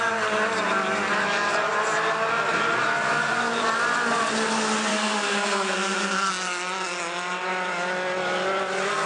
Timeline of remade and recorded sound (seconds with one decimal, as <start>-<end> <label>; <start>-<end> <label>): 0.0-4.9 recorded; 4.9-6.3 remade; 6.3-9.1 recorded